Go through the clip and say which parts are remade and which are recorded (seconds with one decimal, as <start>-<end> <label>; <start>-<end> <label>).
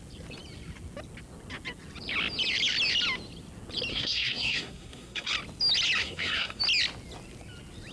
0.0-3.9 recorded; 3.9-5.3 remade; 5.3-6.0 recorded; 6.0-6.6 remade; 6.6-7.9 recorded